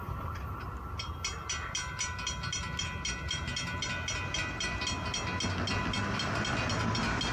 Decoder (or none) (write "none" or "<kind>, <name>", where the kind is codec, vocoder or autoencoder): none